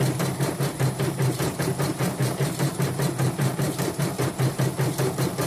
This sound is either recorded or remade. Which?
remade